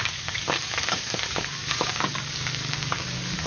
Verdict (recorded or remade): remade